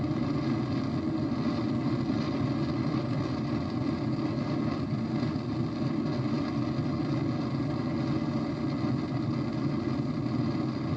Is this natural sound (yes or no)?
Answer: yes